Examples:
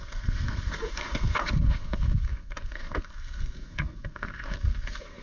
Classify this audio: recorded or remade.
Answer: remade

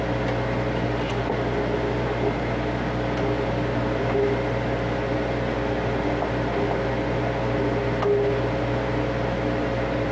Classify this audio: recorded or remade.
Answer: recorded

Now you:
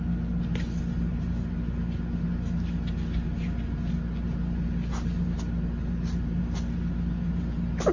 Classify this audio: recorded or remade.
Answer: recorded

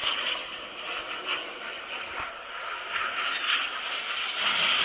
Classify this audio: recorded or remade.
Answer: recorded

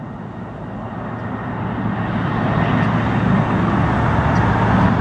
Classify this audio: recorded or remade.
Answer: recorded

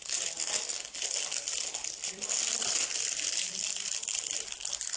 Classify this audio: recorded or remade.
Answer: recorded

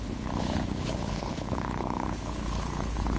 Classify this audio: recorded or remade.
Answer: remade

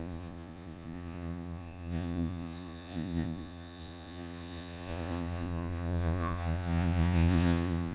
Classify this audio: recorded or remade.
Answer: remade